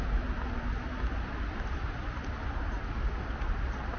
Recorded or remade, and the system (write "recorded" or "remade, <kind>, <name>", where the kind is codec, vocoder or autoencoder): recorded